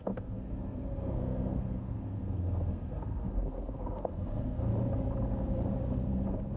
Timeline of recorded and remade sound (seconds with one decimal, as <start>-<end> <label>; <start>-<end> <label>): 0.0-4.7 remade; 4.7-6.6 recorded